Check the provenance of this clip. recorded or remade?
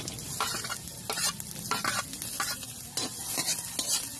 recorded